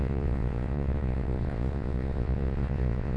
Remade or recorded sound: remade